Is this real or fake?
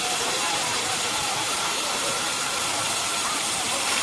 fake